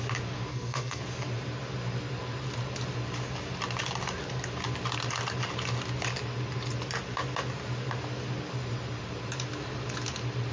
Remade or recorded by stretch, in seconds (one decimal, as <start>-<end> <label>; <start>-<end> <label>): 0.0-0.5 recorded; 0.5-1.0 remade; 1.0-10.5 recorded